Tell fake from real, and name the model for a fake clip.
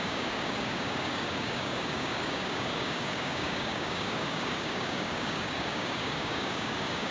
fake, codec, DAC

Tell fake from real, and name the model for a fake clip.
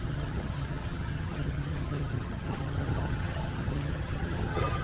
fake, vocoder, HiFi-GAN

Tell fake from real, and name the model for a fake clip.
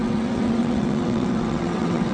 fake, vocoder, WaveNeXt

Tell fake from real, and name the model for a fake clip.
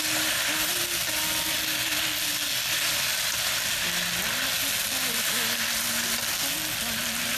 real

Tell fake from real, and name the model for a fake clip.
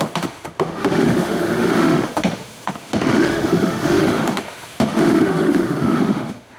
fake, autoencoder, DAC-VAE